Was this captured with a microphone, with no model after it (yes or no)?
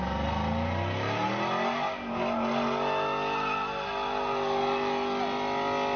yes